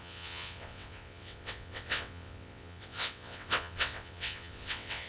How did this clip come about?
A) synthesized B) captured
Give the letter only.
A